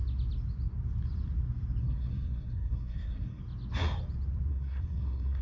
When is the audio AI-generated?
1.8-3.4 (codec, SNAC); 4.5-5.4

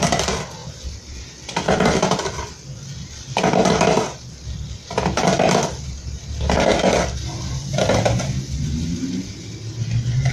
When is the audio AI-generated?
none

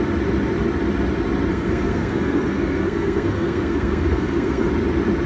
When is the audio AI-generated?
1.5-4.7 (codec, SNAC)

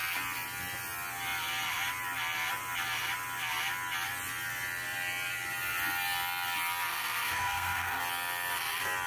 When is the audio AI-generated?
6.9-8.0 (codec, SNAC)

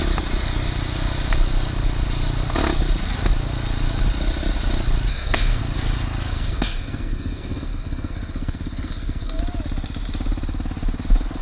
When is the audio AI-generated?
5.1-5.6 (codec, SNAC); 6.3-9.4

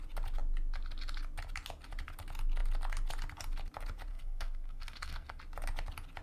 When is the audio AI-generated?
4.1-5.4 (codec, SNAC)